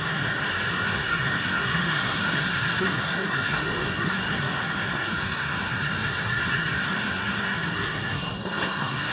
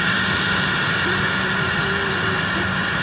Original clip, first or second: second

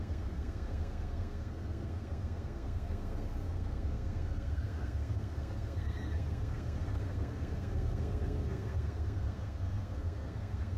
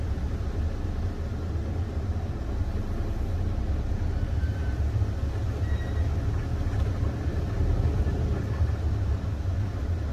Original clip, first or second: second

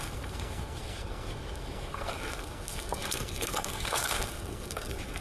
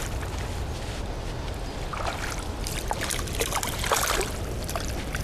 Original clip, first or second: second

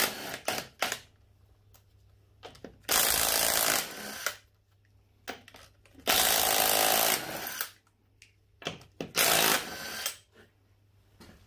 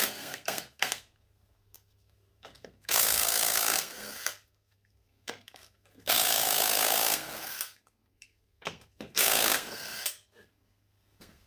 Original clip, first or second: first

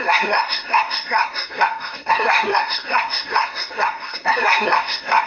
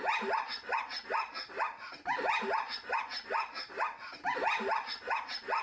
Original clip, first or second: second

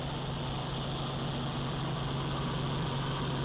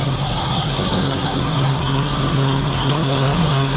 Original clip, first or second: first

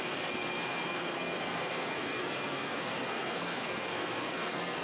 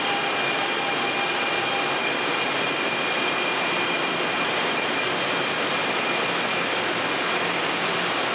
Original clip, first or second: second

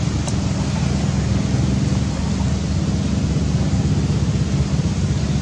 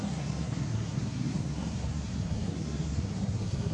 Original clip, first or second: first